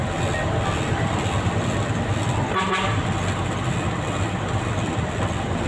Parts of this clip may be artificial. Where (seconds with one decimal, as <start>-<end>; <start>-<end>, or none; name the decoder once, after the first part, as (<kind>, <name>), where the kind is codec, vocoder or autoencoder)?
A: none